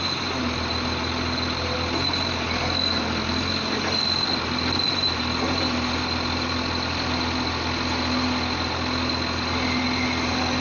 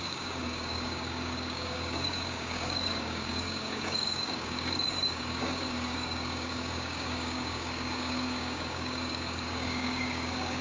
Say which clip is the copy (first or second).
second